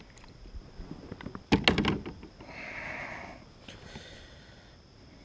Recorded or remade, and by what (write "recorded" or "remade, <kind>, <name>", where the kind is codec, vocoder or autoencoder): recorded